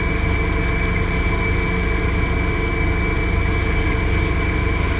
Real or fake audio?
real